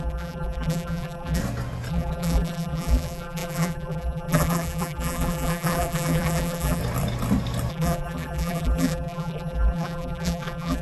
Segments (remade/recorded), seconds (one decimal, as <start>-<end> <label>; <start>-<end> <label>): 0.0-1.4 remade; 1.4-1.9 recorded; 1.9-6.8 remade; 6.8-7.7 recorded; 7.7-10.8 remade